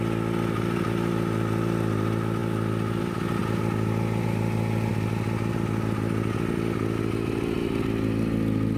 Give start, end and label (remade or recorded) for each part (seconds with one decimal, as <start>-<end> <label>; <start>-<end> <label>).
0.0-8.8 recorded